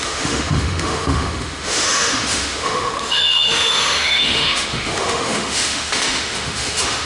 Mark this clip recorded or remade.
remade